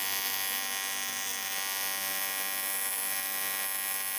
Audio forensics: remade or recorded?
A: recorded